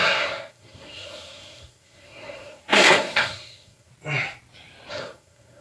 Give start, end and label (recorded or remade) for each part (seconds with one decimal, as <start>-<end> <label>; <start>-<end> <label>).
0.0-3.9 remade; 3.9-4.9 recorded; 4.9-5.6 remade